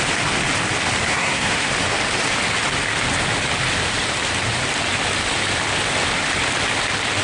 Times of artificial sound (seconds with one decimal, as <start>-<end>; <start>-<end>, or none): 1.1-1.7